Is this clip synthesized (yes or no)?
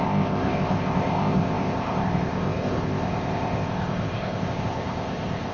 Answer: yes